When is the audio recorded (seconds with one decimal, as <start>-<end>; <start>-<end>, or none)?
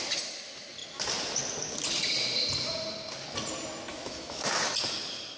0.0-3.9; 4.5-5.4